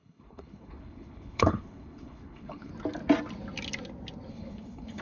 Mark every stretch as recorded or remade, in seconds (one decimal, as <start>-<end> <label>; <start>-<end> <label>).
0.0-2.7 remade; 2.7-4.3 recorded; 4.3-5.0 remade